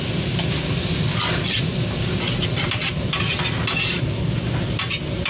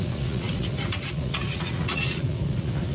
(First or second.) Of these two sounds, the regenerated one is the second